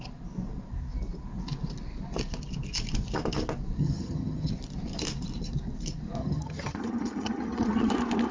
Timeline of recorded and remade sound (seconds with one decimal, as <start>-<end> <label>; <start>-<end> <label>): 0.0-3.8 recorded; 3.8-4.5 remade; 4.5-6.2 recorded; 6.2-7.9 remade; 7.9-8.3 recorded